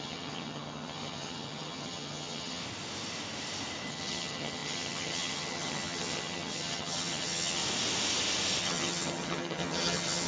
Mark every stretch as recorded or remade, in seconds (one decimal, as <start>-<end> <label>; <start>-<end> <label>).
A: 0.0-2.6 remade; 2.6-3.9 recorded; 3.9-7.6 remade; 7.6-8.6 recorded; 8.6-10.3 remade